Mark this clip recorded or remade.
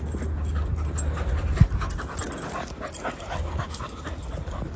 recorded